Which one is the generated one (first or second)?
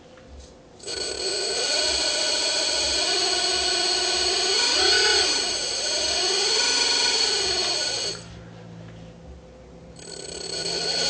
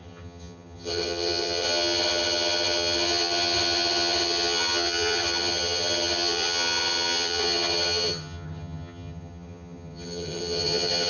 second